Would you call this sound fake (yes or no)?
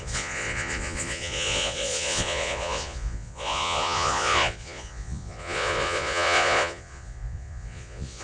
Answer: yes